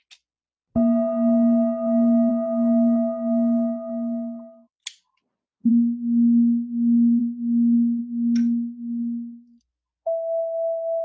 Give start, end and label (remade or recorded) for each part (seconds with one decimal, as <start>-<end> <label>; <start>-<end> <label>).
0.0-5.7 recorded; 5.7-7.2 remade; 7.2-11.0 recorded